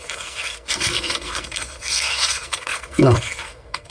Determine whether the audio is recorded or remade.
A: remade